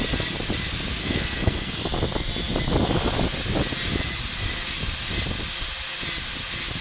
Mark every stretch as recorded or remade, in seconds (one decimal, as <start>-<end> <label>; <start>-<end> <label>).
0.0-1.0 recorded; 1.0-1.8 remade; 1.8-6.8 recorded